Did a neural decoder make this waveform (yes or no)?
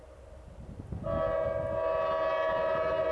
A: no